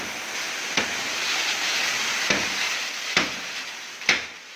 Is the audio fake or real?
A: real